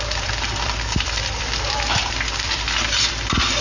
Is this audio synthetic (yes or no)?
yes